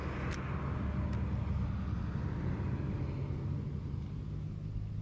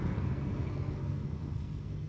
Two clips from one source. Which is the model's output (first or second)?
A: second